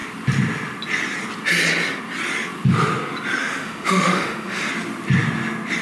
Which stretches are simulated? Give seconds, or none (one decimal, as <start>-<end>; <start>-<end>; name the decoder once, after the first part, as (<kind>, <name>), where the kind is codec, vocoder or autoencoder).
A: 3.4-4.7 (autoencoder, DAC-VAE)